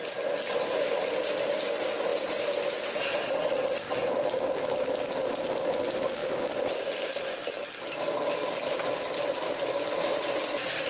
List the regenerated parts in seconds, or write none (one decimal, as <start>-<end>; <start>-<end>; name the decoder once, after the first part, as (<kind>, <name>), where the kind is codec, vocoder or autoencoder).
6.2-7.2 (vocoder, BigVGAN v2)